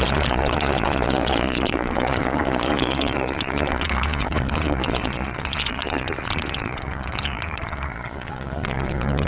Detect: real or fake fake